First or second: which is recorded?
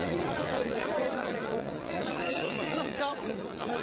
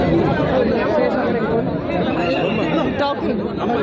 second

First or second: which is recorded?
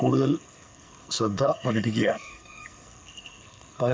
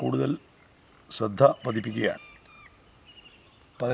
second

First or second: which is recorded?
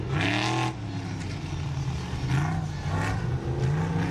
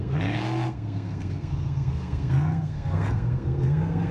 first